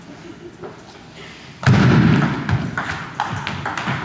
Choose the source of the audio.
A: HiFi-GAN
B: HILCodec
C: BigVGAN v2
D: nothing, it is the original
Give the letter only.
D